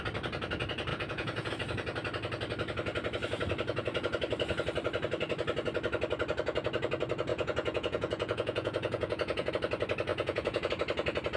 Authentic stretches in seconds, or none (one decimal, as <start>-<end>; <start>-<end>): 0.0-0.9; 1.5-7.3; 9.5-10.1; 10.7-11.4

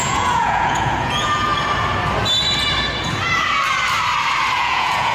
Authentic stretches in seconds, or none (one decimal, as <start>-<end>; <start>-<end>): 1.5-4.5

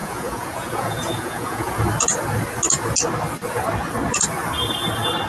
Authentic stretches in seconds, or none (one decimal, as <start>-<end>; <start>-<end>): 1.7-5.3